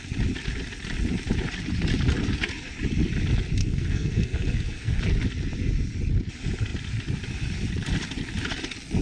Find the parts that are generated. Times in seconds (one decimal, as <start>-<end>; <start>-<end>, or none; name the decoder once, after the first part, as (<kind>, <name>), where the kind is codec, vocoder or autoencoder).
3.6-5.0 (codec, SNAC)